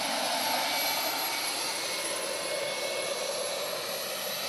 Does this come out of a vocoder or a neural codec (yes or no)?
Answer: no